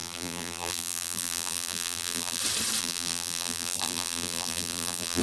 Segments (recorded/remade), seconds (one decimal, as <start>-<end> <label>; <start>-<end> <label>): 0.0-2.4 remade; 2.4-2.8 recorded; 2.8-5.2 remade